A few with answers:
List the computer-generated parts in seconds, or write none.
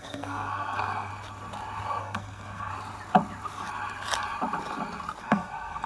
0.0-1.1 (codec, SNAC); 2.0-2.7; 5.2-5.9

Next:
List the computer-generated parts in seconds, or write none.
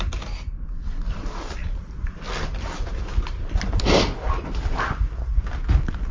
none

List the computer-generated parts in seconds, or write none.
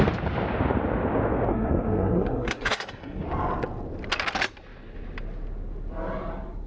1.5-3.2 (codec, SNAC)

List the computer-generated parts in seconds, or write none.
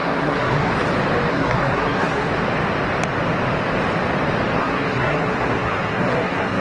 0.0-0.7 (codec, SNAC); 1.3-2.3; 4.6-6.6